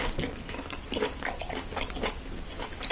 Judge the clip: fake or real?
real